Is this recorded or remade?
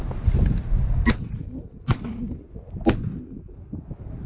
recorded